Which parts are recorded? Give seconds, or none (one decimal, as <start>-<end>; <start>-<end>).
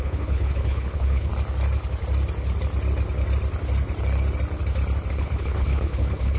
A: 1.3-5.1